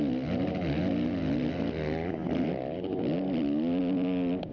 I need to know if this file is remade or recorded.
recorded